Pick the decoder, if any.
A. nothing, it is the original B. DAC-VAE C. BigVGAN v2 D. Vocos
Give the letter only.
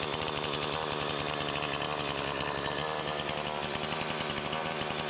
A